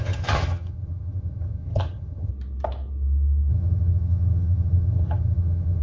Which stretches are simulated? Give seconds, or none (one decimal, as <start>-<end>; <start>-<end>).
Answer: 0.0-2.3; 3.5-5.8